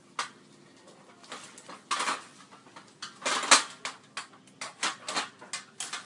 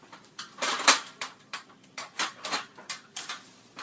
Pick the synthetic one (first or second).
second